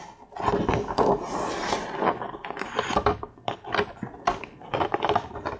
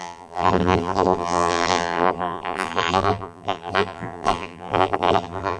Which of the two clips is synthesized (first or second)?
second